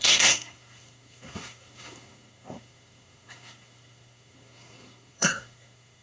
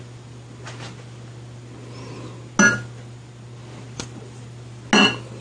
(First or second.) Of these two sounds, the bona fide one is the second